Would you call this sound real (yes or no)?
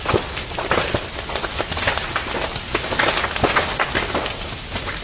yes